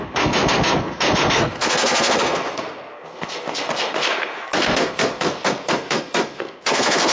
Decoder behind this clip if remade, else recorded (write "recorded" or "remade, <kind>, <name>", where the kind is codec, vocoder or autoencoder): remade, codec, SNAC